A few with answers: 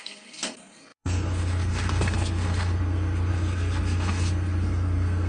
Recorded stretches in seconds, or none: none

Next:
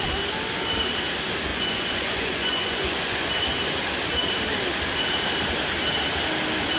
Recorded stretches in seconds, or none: 0.0-1.5; 3.3-6.8

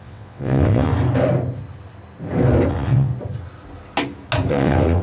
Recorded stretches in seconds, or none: 0.9-2.7; 3.1-4.5

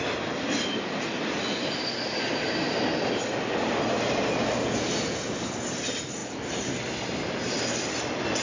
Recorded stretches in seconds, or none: 0.0-8.4

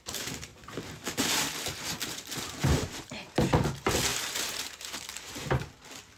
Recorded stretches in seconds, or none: 0.0-0.5; 3.4-4.1; 5.3-6.2